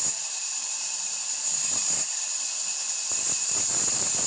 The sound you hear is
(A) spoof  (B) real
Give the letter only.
A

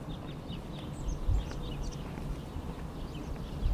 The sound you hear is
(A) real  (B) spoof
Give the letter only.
A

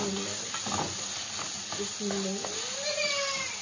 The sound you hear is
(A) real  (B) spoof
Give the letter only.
A